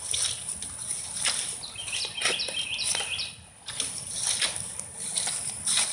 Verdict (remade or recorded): recorded